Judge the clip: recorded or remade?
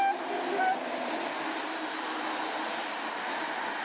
recorded